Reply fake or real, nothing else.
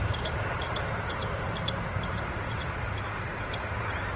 fake